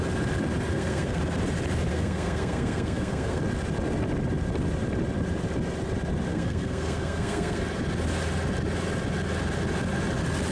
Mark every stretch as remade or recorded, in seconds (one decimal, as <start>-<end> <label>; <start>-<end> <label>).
0.0-0.7 recorded; 0.7-1.2 remade; 1.2-1.9 recorded; 1.9-3.4 remade; 3.4-6.3 recorded; 6.3-7.6 remade; 7.6-10.5 recorded